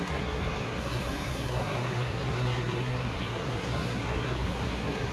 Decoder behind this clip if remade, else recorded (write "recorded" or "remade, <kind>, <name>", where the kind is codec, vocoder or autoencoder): remade, codec, SNAC